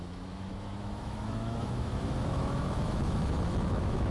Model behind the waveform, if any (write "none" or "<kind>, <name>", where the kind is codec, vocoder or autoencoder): autoencoder, DAC-VAE